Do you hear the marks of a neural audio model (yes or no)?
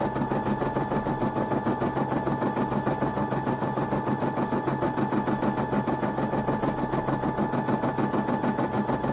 no